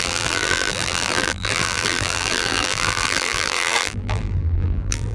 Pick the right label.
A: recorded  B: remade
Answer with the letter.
B